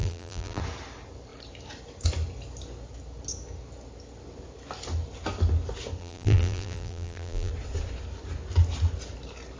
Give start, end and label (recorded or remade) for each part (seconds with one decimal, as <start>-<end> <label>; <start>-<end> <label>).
0.0-0.6 remade; 0.6-6.0 recorded; 6.0-7.5 remade; 7.5-9.6 recorded